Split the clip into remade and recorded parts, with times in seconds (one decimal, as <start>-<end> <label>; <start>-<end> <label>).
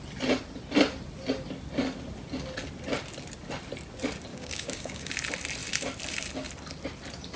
0.0-4.3 recorded; 4.3-5.1 remade; 5.1-7.4 recorded